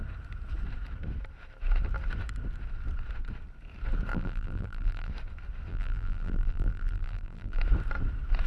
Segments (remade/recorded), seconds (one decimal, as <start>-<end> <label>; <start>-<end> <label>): 0.0-4.1 recorded; 4.1-5.1 remade; 5.1-5.7 recorded; 5.7-7.6 remade; 7.6-8.5 recorded